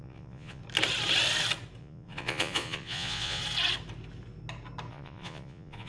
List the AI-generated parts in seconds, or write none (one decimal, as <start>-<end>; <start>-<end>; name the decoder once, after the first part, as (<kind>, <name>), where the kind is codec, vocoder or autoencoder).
0.0-0.6 (vocoder, Vocos); 1.8-3.4; 4.9-5.9